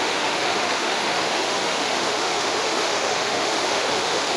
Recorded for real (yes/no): no